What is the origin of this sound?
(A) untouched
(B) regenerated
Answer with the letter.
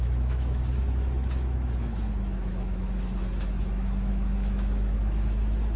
B